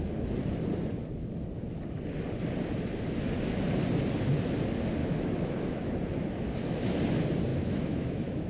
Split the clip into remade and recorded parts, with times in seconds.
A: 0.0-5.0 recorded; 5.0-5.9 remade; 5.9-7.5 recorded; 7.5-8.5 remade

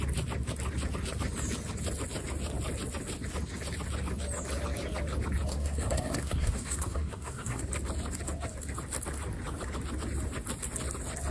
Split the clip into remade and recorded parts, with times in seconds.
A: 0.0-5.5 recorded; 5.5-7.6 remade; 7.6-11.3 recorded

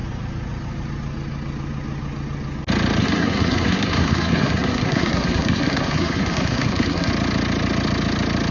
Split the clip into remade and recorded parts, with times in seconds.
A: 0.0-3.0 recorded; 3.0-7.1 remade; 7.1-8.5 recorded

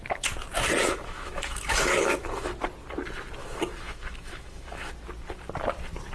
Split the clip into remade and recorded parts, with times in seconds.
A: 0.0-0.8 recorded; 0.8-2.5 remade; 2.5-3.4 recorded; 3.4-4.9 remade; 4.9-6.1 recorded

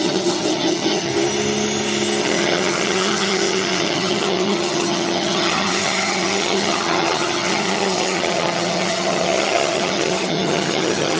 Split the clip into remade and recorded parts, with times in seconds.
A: 0.0-1.1 remade; 1.1-2.2 recorded; 2.2-11.2 remade

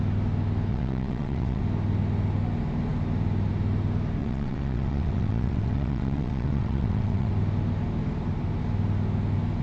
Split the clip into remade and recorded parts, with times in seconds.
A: 0.0-0.7 recorded; 0.7-1.6 remade; 1.6-4.2 recorded; 4.2-7.3 remade; 7.3-9.6 recorded